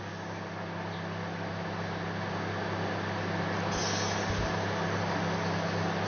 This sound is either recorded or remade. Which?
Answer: recorded